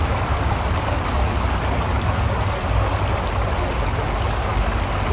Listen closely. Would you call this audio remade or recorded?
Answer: recorded